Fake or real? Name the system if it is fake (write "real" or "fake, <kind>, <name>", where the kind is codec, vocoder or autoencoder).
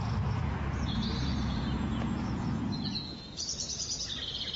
fake, vocoder, Vocos